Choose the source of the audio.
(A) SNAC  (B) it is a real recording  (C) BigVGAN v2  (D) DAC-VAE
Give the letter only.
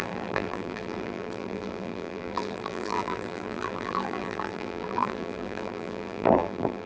C